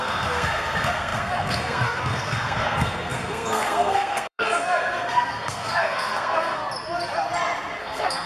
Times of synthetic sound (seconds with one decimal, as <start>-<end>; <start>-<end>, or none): 0.0-6.6; 7.8-8.3